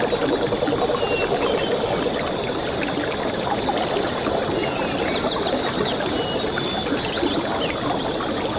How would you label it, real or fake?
real